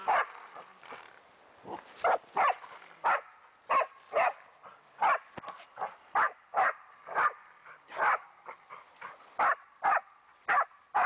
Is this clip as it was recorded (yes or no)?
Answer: no